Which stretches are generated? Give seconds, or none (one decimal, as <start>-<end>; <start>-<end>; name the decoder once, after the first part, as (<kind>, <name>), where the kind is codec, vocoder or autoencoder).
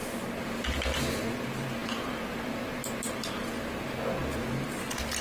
none